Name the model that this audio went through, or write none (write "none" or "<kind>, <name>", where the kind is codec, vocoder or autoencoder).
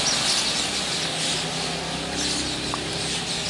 none